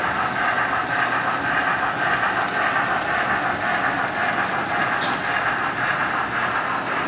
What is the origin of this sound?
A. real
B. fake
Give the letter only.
A